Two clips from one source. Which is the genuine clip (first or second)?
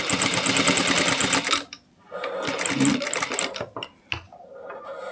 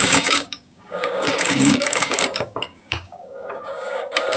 first